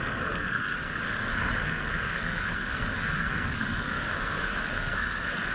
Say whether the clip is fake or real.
fake